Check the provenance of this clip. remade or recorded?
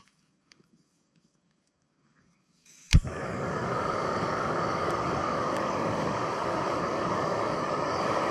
remade